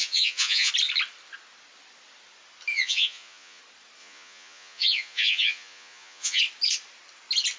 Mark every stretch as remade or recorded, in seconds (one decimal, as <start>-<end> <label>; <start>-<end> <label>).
0.0-0.7 remade; 0.7-2.7 recorded; 2.7-3.6 remade; 3.6-4.0 recorded; 4.0-6.4 remade; 6.4-7.6 recorded